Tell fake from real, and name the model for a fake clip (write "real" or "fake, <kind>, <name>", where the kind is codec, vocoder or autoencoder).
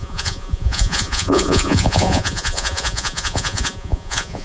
fake, vocoder, Vocos